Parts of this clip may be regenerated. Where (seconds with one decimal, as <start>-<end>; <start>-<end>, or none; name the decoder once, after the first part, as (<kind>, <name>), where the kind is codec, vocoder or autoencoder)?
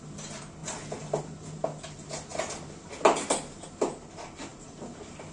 none